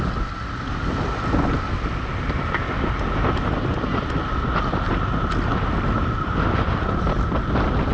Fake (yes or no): no